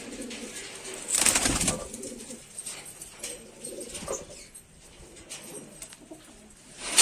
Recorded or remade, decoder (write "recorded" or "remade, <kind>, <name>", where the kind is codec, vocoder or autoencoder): recorded